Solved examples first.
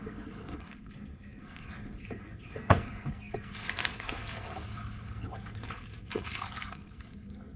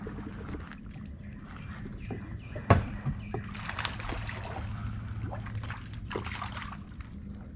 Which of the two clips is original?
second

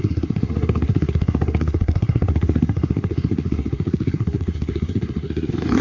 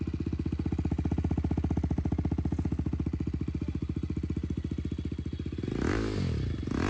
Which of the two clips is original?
second